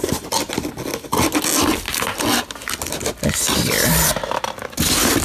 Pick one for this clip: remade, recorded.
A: recorded